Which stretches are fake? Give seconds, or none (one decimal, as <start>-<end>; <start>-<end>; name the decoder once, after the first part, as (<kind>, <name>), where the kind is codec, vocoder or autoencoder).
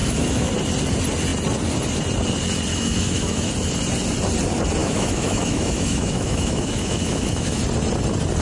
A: 0.0-0.5 (autoencoder, DAC-VAE); 2.7-3.5; 4.8-7.6